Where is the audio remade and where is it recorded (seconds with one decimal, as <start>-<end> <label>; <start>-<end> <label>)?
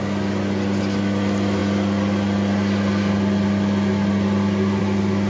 0.0-5.3 recorded